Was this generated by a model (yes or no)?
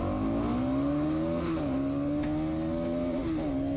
no